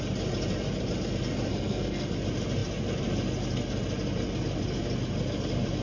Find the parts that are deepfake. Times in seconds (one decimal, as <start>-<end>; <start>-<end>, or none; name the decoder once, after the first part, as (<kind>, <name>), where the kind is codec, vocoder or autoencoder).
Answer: 1.5-2.1 (codec, SNAC)